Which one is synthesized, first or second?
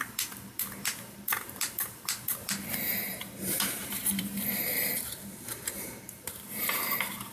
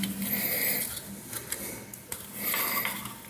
first